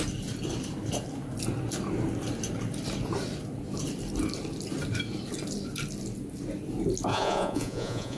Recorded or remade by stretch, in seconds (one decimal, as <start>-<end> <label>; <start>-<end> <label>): 0.0-7.1 recorded; 7.1-8.2 remade